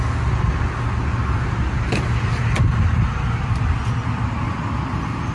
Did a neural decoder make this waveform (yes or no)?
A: no